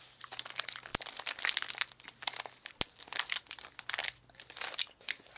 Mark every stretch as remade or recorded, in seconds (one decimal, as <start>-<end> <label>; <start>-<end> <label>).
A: 0.0-5.4 recorded